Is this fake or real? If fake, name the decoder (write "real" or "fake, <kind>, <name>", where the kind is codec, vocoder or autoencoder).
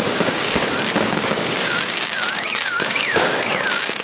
fake, codec, DAC